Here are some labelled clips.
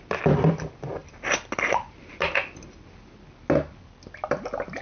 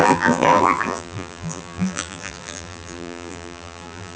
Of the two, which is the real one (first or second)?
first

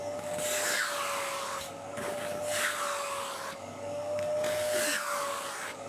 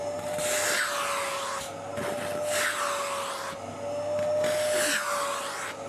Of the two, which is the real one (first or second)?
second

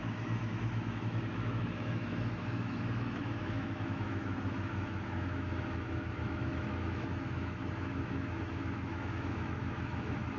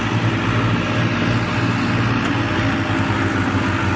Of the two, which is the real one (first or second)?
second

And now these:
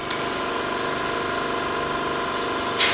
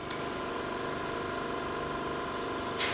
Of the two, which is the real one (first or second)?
first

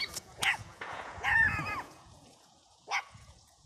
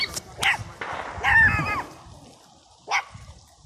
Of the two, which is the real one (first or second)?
second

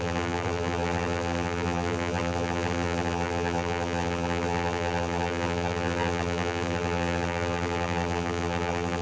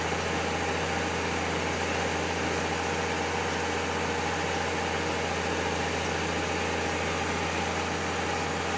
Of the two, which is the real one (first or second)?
second